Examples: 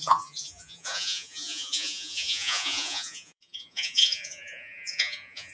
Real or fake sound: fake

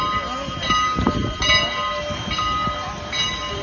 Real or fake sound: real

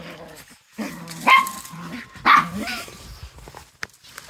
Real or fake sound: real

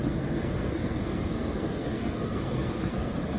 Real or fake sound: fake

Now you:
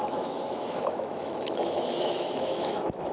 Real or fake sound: fake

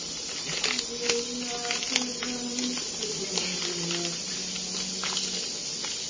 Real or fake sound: real